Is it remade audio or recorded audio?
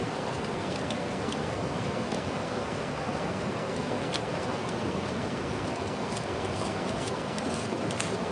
remade